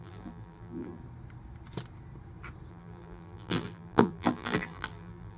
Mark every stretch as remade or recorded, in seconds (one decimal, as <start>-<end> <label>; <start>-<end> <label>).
0.0-1.0 remade; 1.0-2.7 recorded; 2.7-5.4 remade